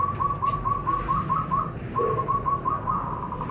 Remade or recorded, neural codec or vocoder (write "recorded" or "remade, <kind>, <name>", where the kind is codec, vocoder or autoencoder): recorded